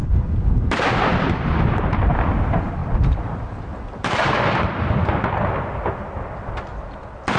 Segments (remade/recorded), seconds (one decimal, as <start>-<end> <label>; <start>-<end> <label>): 0.0-1.1 recorded; 1.1-2.1 remade; 2.1-2.8 recorded; 2.8-4.8 remade; 4.8-7.4 recorded